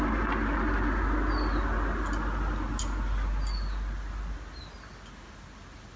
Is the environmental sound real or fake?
real